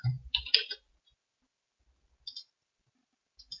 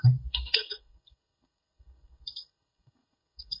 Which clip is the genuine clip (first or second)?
first